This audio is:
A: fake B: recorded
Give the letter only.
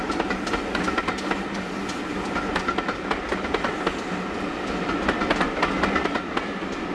B